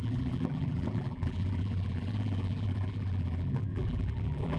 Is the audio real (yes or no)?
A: no